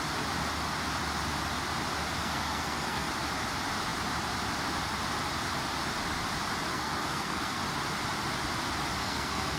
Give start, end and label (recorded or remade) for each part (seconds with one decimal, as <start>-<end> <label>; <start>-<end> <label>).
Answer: 0.0-2.2 recorded; 2.2-3.1 remade; 3.1-6.7 recorded; 6.7-7.6 remade; 7.6-9.0 recorded; 9.0-9.6 remade